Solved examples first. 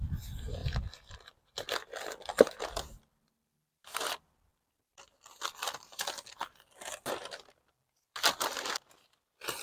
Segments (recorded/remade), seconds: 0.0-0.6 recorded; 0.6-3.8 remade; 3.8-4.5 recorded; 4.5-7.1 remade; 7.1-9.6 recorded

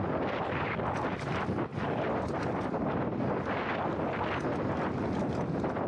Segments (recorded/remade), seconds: 0.0-5.9 recorded

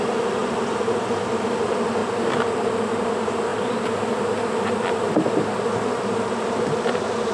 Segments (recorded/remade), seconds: 0.0-0.4 remade; 0.4-1.3 recorded; 1.3-2.0 remade; 2.0-3.0 recorded; 3.0-7.3 remade

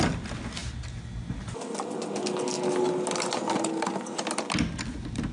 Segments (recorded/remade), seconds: 0.0-5.3 recorded